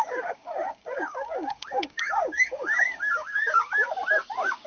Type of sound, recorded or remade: remade